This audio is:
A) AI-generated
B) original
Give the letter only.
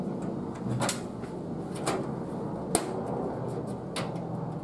B